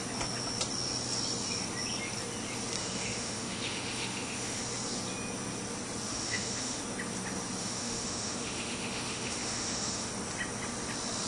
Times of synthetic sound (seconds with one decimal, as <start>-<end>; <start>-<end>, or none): 2.8-4.6; 6.1-6.8; 7.6-10.1